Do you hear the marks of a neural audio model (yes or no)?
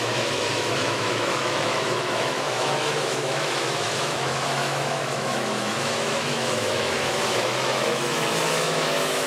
yes